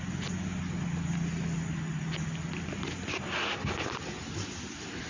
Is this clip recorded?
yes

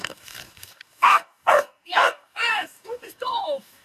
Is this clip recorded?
no